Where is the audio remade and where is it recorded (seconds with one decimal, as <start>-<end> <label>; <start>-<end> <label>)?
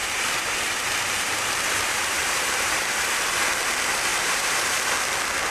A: 0.0-3.3 remade; 3.3-4.1 recorded; 4.1-4.9 remade; 4.9-5.5 recorded